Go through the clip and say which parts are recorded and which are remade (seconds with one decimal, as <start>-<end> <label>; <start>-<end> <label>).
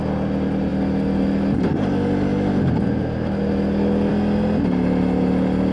0.0-5.7 recorded